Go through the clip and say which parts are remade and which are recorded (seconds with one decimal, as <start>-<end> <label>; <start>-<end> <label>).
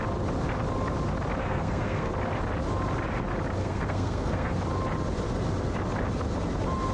0.0-1.4 recorded; 1.4-2.1 remade; 2.1-3.6 recorded; 3.6-4.6 remade; 4.6-6.9 recorded